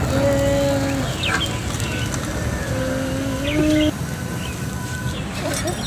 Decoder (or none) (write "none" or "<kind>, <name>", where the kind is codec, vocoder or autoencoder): none